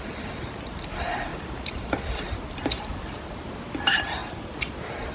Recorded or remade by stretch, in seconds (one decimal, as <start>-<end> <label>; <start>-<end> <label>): 0.0-1.3 recorded; 1.3-3.0 remade; 3.0-5.1 recorded